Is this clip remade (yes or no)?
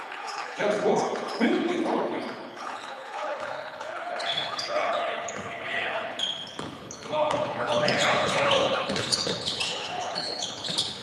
yes